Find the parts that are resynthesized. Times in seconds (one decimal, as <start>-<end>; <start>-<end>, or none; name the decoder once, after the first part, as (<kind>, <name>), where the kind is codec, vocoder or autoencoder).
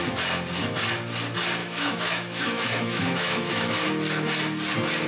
1.6-3.7 (autoencoder, DAC-VAE)